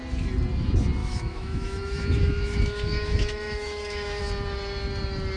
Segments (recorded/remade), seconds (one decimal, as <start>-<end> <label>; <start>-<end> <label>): 0.0-1.0 recorded; 1.0-4.2 remade; 4.2-5.4 recorded